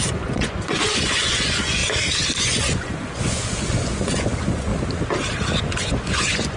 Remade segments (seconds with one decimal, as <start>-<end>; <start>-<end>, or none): 0.0-1.8; 2.4-4.7; 5.6-6.6